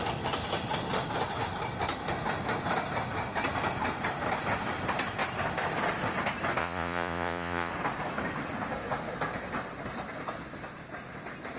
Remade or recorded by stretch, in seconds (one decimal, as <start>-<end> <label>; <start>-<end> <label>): 0.0-6.6 recorded; 6.6-7.7 remade; 7.7-11.6 recorded